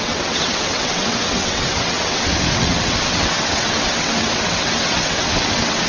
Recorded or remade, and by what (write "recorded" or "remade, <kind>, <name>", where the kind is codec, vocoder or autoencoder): remade, vocoder, WaveNeXt